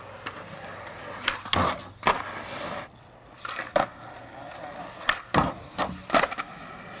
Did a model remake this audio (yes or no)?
no